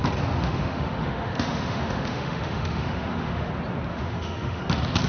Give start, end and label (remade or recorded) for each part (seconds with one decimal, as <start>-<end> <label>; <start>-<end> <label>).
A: 0.0-0.4 recorded; 0.4-3.5 remade; 3.5-3.9 recorded; 3.9-4.6 remade; 4.6-5.1 recorded